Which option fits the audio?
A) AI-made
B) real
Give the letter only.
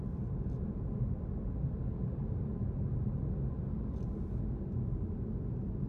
B